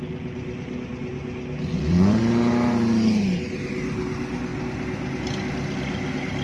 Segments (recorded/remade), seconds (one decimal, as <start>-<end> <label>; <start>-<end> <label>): 0.0-1.1 recorded; 1.1-2.2 remade; 2.2-6.4 recorded